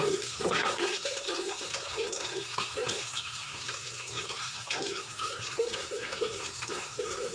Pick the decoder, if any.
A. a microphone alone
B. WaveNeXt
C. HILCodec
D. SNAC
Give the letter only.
D